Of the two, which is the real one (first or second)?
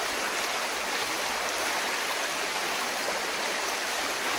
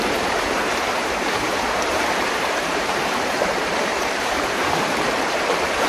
first